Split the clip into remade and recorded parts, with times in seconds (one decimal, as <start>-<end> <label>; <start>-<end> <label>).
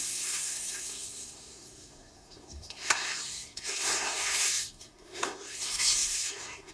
0.0-6.7 remade